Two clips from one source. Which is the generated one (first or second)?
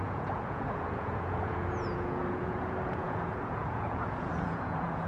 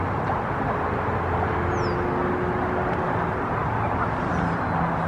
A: first